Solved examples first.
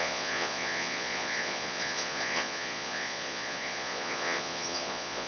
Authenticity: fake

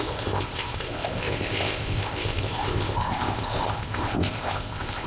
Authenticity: fake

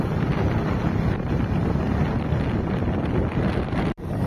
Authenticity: real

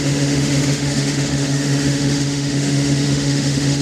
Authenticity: fake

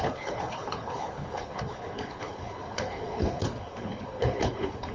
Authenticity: fake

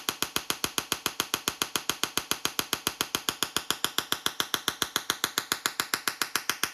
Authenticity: real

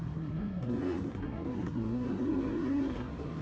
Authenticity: fake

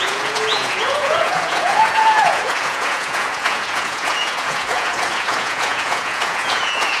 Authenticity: fake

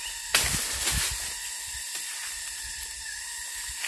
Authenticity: real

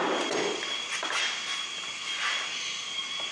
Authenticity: real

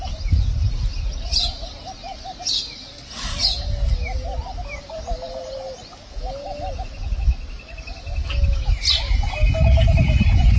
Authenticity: real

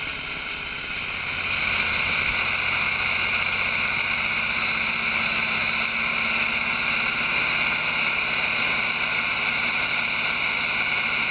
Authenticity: real